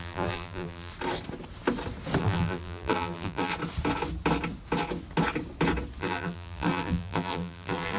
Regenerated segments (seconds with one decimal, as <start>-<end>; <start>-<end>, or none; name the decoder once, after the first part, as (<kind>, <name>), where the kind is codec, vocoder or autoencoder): 0.0-0.9 (vocoder, BigVGAN v2); 2.2-3.5; 6.0-8.0